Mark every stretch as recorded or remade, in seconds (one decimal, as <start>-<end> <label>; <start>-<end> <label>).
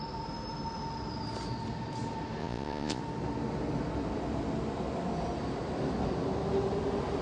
0.0-2.4 recorded; 2.4-3.0 remade; 3.0-7.2 recorded